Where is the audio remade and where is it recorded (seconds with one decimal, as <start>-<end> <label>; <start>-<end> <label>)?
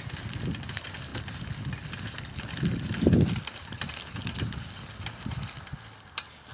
0.0-6.5 recorded